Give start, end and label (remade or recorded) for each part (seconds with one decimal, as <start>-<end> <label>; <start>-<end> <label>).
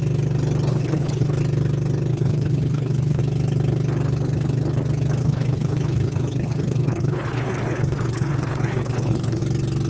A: 0.0-0.7 recorded; 0.7-1.4 remade; 1.4-2.1 recorded; 2.1-3.2 remade; 3.2-5.2 recorded; 5.2-9.4 remade; 9.4-9.9 recorded